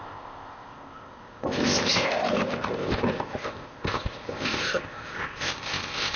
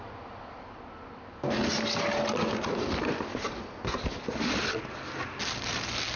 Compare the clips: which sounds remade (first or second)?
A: first